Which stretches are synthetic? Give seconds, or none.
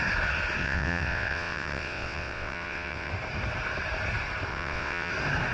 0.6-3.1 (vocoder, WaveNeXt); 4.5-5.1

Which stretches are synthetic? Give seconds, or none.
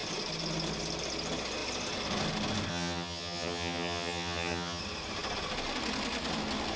2.7-4.8 (vocoder, HiFi-GAN)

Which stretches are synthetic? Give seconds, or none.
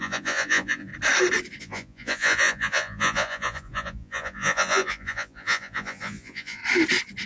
0.0-0.9 (vocoder, Vocos); 1.6-6.6